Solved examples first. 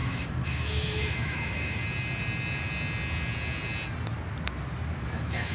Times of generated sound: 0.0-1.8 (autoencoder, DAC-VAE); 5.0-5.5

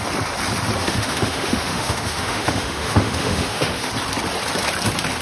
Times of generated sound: 0.8-3.9 (autoencoder, DAC-VAE)

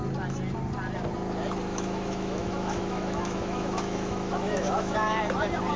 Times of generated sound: 1.7-5.2 (autoencoder, DAC-VAE)

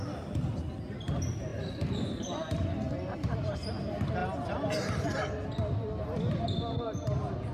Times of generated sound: none

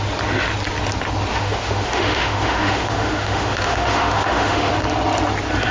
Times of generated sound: 1.3-4.7 (autoencoder, DAC-VAE)

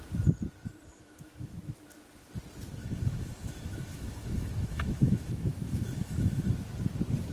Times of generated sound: 0.9-1.5 (autoencoder, DAC-VAE); 2.8-6.5